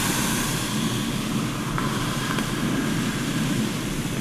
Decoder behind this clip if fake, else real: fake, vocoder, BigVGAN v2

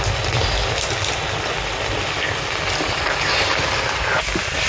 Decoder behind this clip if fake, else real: real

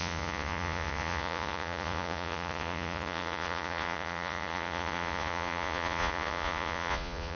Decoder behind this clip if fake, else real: fake, vocoder, Vocos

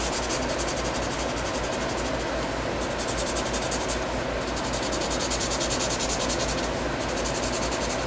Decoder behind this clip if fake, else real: real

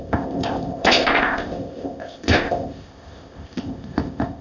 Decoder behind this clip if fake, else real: fake, codec, ZipCodec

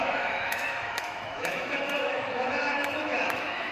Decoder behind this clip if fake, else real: fake, autoencoder, DAC-VAE